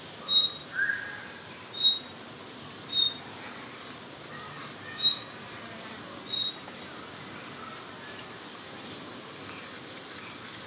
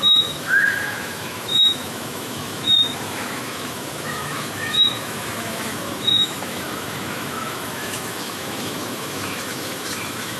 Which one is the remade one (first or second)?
second